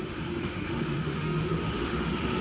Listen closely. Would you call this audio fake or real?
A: fake